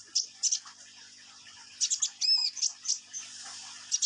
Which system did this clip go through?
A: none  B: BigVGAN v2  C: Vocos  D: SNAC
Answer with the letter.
A